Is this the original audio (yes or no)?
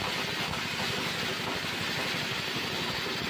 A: yes